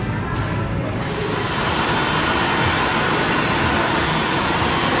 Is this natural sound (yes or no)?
yes